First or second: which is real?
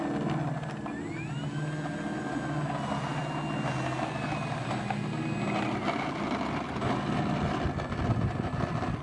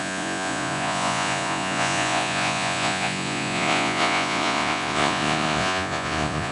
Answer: first